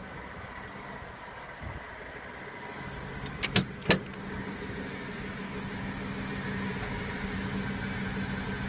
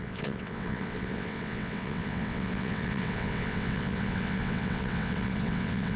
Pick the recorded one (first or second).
first